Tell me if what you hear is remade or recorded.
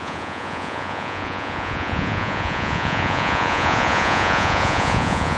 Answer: remade